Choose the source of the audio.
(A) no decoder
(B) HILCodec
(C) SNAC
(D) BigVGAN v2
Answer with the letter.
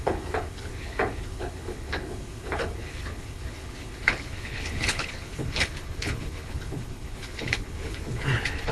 B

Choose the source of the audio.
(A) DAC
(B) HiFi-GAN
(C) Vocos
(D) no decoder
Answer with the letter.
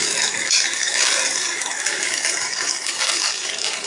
A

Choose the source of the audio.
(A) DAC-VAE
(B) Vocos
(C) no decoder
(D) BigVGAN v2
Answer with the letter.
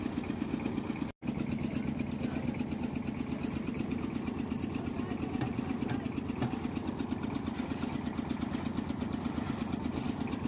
C